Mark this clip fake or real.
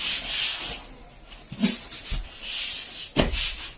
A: real